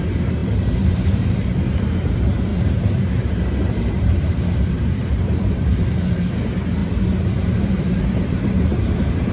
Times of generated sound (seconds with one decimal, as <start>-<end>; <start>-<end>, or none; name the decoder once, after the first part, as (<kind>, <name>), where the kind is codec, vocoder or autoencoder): 0.0-9.3 (vocoder, BigVGAN v2)